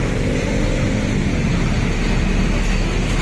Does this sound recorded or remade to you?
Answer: recorded